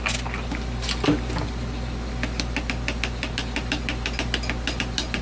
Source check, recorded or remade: recorded